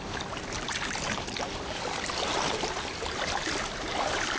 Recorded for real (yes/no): yes